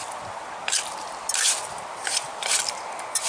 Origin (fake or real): real